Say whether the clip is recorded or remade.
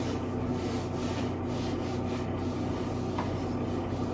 recorded